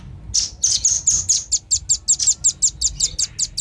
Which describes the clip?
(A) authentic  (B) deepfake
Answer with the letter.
A